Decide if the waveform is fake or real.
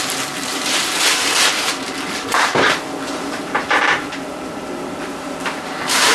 fake